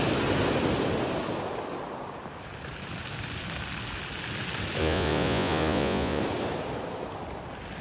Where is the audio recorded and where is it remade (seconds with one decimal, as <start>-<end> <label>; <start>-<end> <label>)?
0.0-4.8 recorded; 4.8-6.2 remade; 6.2-7.8 recorded

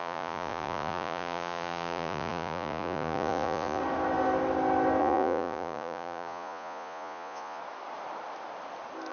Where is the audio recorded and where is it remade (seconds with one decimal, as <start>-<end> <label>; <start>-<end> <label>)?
0.0-3.8 remade; 3.8-5.0 recorded; 5.0-7.6 remade; 7.6-9.1 recorded

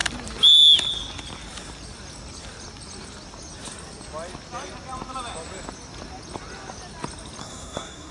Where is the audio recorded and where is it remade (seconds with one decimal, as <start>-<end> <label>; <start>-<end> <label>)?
0.0-7.4 recorded; 7.4-8.1 remade

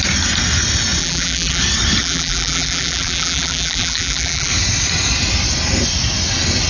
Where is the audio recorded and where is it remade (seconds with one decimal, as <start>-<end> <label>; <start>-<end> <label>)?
0.0-1.0 recorded; 1.0-1.6 remade; 1.6-2.0 recorded; 2.0-4.5 remade; 4.5-6.7 recorded

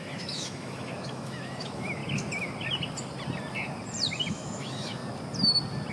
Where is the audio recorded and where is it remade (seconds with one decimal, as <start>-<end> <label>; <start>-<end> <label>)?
0.0-2.0 remade; 2.0-4.3 recorded; 4.3-5.0 remade; 5.0-5.9 recorded